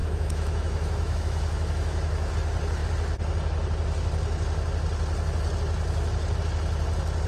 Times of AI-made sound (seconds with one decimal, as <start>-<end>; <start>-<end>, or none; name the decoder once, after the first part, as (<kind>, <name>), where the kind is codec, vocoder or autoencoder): 0.0-2.3 (autoencoder, DAC-VAE)